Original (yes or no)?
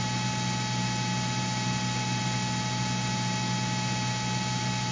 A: yes